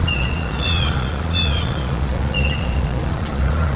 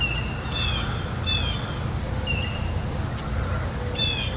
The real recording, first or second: second